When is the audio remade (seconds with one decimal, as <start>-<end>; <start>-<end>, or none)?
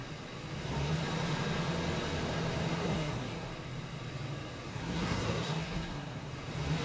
2.7-3.5; 4.7-6.3